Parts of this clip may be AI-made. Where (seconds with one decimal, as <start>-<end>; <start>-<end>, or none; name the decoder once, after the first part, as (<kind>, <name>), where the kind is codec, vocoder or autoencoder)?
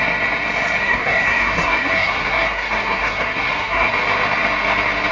0.8-3.9 (codec, SNAC)